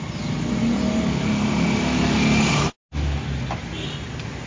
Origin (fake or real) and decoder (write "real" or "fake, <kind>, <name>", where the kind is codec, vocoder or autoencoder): real